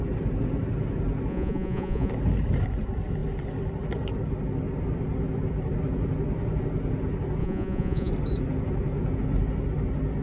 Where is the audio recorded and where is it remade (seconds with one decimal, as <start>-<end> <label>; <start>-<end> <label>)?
0.0-1.3 recorded; 1.3-2.1 remade; 2.1-7.4 recorded; 7.4-8.1 remade; 8.1-10.2 recorded